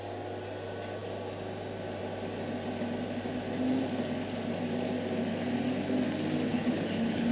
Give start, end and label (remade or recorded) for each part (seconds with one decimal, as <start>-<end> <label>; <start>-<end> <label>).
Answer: 0.0-6.5 recorded; 6.5-7.3 remade